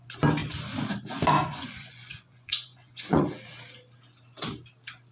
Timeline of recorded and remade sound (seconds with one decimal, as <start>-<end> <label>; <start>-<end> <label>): 0.0-1.4 recorded; 1.4-3.3 remade; 3.3-5.1 recorded

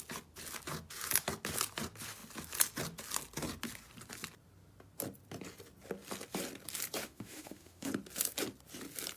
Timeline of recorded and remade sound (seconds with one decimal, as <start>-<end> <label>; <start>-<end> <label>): 0.0-7.0 recorded; 7.0-7.9 remade; 7.9-9.2 recorded

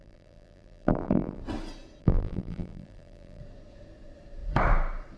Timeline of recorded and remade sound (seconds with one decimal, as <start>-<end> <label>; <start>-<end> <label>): 0.0-1.4 remade; 1.4-2.0 recorded; 2.0-3.4 remade; 3.4-5.2 recorded